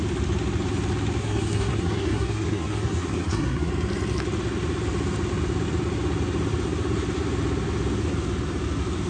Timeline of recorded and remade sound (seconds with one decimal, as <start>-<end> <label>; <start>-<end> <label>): 0.0-1.2 recorded; 1.2-3.7 remade; 3.7-9.1 recorded